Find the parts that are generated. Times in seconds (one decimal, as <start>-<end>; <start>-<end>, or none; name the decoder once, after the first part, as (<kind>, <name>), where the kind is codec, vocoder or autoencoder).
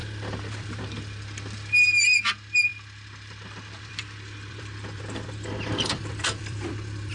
0.0-0.8 (vocoder, BigVGAN v2); 2.7-7.1